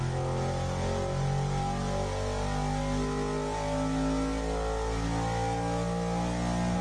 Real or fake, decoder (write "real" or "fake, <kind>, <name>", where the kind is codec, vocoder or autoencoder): real